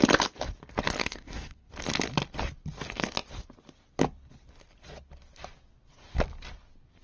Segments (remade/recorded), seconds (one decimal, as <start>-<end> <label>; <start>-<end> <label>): 0.0-1.0 recorded; 1.0-1.7 remade; 1.7-7.0 recorded